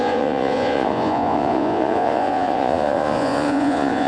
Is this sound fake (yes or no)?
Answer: yes